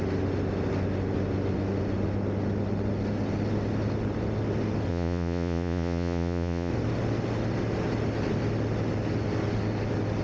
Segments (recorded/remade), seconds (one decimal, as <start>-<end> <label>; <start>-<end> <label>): 0.0-4.9 recorded; 4.9-6.7 remade; 6.7-10.2 recorded